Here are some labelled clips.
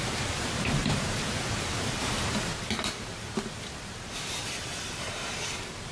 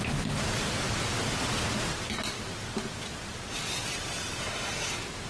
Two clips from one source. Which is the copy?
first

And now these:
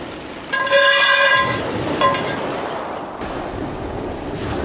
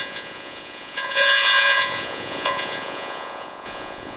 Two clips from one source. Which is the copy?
second